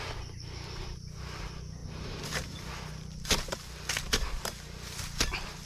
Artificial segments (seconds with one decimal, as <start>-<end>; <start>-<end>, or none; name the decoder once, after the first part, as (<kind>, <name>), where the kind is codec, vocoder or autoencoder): none